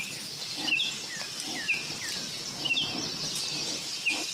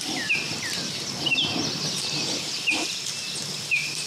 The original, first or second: first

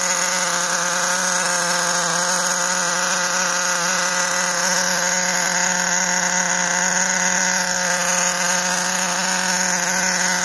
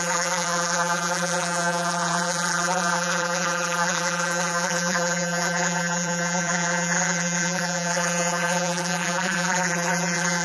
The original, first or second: first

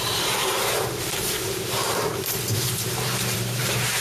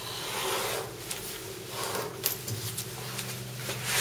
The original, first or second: second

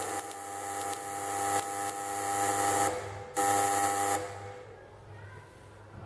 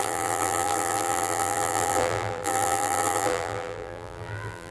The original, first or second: first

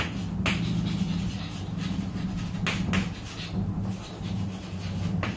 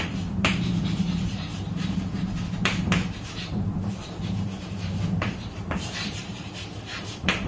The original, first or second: first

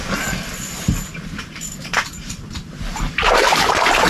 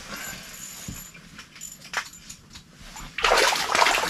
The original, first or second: second